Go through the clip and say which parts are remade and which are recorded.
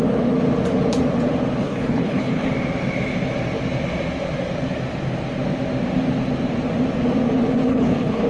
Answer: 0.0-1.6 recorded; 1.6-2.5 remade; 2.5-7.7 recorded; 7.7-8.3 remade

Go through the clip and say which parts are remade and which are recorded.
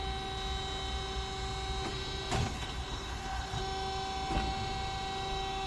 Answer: 0.0-2.4 recorded; 2.4-3.6 remade; 3.6-5.7 recorded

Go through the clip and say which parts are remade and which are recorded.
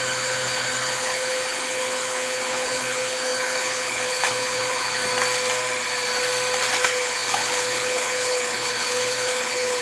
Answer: 0.0-5.0 remade; 5.0-6.8 recorded; 6.8-9.8 remade